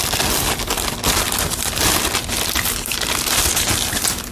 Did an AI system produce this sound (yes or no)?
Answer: no